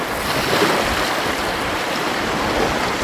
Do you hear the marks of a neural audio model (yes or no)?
no